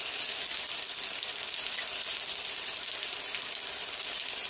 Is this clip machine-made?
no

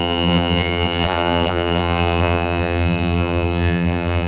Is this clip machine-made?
yes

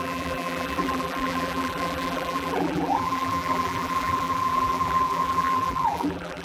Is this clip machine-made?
yes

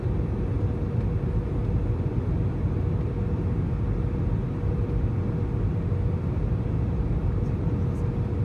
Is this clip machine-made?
no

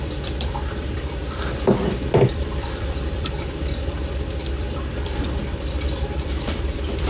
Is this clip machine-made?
yes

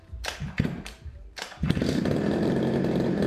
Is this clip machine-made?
yes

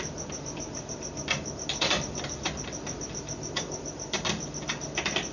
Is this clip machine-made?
no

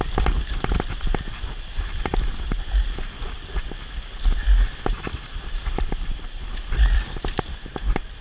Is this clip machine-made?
yes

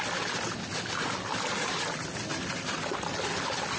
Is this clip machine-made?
no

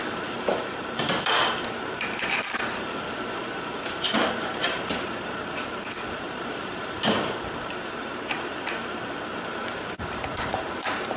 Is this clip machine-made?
yes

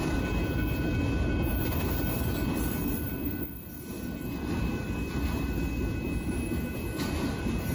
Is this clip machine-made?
yes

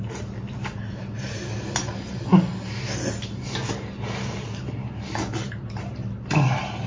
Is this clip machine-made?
no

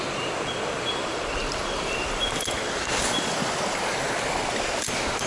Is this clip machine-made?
yes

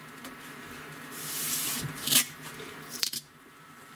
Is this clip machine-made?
yes